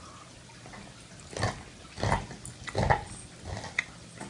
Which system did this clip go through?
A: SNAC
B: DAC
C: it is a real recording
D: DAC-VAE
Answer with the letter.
C